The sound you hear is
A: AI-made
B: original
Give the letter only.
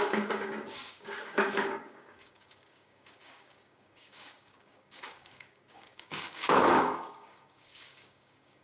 A